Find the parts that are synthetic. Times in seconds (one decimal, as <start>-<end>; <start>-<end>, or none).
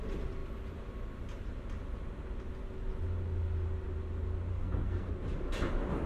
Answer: 4.5-5.1